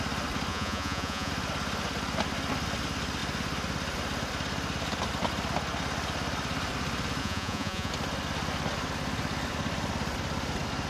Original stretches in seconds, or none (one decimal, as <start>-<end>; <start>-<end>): 0.0-0.5; 1.3-7.2; 7.9-10.9